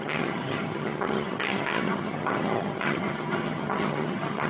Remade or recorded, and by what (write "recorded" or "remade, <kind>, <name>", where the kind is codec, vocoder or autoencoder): remade, vocoder, HiFi-GAN